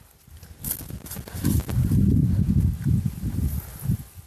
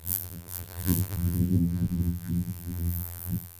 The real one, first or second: first